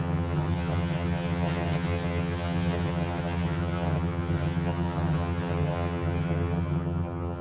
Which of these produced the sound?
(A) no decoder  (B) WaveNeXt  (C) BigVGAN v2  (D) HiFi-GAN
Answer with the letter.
D